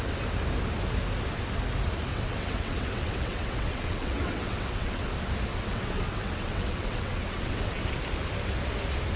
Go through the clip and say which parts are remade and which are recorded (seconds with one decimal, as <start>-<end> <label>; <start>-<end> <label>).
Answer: 0.0-2.1 recorded; 2.1-5.1 remade; 5.1-5.5 recorded; 5.5-7.8 remade; 7.8-9.2 recorded